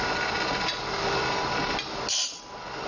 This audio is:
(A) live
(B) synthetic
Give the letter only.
A